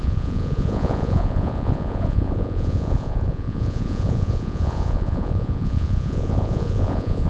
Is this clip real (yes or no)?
no